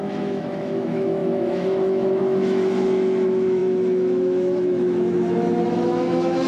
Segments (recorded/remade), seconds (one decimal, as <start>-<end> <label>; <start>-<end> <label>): 0.0-6.5 remade